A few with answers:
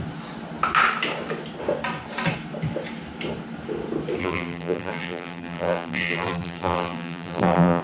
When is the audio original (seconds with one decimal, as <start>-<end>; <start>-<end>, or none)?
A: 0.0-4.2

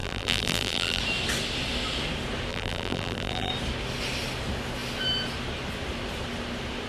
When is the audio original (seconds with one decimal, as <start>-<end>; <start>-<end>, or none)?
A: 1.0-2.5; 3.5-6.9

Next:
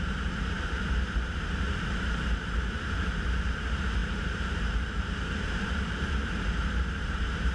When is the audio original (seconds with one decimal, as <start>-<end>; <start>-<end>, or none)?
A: none

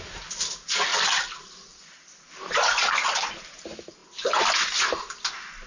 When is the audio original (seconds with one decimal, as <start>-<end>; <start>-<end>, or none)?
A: 0.0-0.9; 2.8-5.7

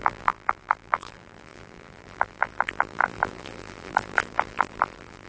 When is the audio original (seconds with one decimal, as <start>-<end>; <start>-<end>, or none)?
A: none

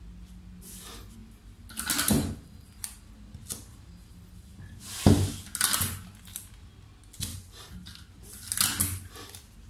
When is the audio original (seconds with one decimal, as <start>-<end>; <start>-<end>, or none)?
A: 0.0-7.3; 8.1-9.7

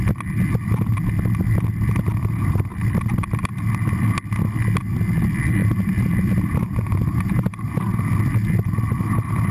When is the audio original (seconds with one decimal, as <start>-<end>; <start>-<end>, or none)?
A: 0.0-5.6; 7.9-9.5